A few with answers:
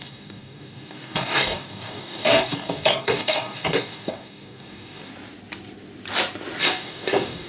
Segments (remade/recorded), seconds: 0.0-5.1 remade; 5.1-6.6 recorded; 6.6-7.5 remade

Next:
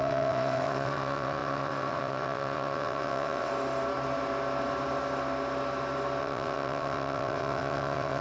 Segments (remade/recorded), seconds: 0.0-3.5 remade; 3.5-6.2 recorded; 6.2-8.2 remade

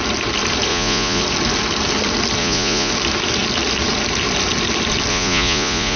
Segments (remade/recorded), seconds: 0.0-0.7 recorded; 0.7-1.2 remade; 1.2-2.4 recorded; 2.4-2.9 remade; 2.9-5.1 recorded; 5.1-6.0 remade

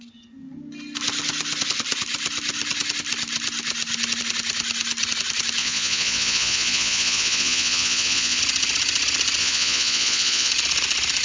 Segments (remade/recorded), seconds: 0.0-5.6 recorded; 5.6-8.4 remade; 8.4-9.4 recorded; 9.4-10.5 remade; 10.5-11.2 recorded

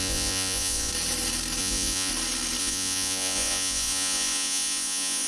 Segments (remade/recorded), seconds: 0.0-0.9 remade; 0.9-1.6 recorded; 1.6-2.1 remade; 2.1-2.6 recorded; 2.6-5.3 remade

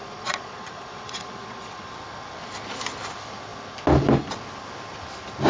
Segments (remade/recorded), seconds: 0.0-1.9 remade; 1.9-5.5 recorded

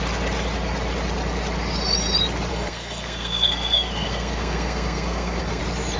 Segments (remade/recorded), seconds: 0.0-2.5 recorded; 2.5-5.6 remade; 5.6-6.0 recorded

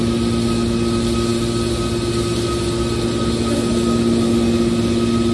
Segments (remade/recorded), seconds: 0.0-5.3 recorded